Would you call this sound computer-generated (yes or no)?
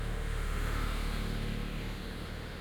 yes